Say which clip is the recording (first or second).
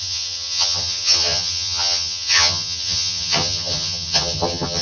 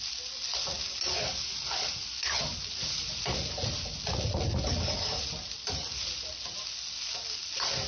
second